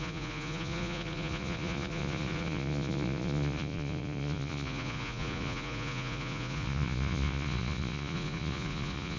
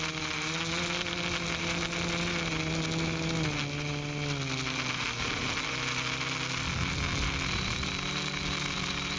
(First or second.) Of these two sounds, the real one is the second